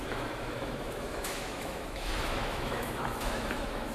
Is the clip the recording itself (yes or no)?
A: no